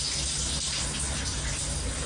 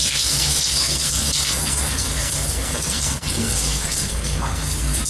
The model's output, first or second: second